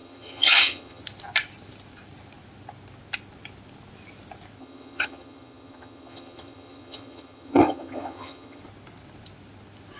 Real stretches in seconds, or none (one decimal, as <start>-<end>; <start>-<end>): 1.0-4.6; 8.6-10.0